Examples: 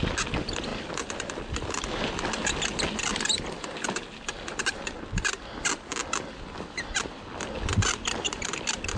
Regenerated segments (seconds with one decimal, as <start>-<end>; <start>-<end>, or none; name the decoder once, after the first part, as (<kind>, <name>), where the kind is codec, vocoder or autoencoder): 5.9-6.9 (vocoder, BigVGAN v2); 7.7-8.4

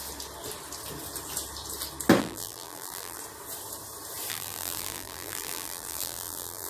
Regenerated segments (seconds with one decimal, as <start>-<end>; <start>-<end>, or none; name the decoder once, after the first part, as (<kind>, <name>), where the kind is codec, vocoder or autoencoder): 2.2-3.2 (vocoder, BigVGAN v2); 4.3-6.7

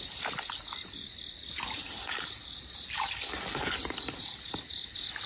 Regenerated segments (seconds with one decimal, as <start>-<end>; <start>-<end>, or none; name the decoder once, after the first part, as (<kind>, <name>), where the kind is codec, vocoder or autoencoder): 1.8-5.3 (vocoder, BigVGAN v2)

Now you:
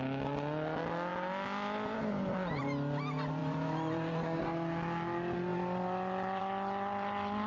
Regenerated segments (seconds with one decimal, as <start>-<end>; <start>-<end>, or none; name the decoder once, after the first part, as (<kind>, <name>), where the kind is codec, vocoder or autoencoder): 1.1-2.6 (vocoder, BigVGAN v2); 3.4-4.4; 5.5-6.4

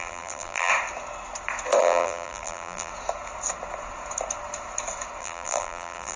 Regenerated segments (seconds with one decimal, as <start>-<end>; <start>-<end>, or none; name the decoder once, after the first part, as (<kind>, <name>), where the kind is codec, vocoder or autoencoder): 0.0-0.7 (vocoder, BigVGAN v2); 1.8-2.9; 5.2-6.2

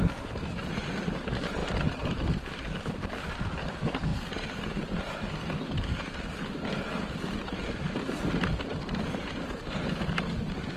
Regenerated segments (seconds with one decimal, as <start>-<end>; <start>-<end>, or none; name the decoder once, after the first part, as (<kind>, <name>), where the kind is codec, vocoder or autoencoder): 1.6-2.7 (vocoder, BigVGAN v2)